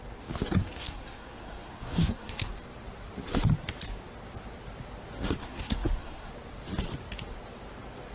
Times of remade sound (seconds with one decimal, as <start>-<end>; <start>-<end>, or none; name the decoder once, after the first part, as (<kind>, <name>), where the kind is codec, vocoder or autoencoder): 0.6-2.5 (codec, SNAC); 5.4-6.3